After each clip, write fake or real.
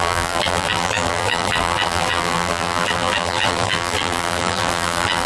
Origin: fake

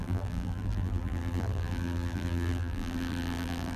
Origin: fake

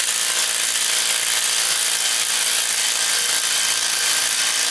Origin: real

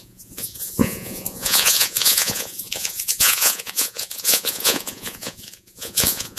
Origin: fake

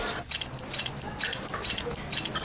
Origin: real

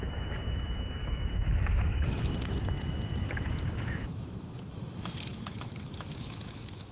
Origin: fake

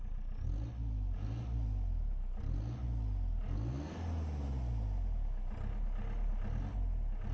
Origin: real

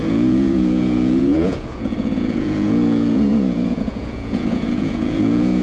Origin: fake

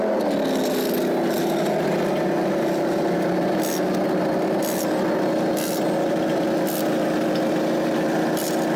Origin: real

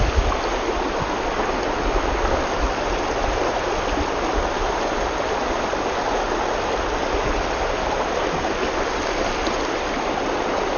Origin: real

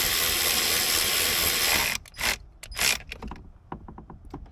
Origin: real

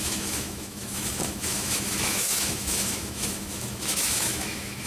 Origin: fake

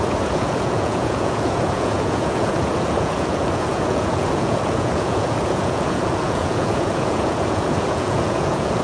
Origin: fake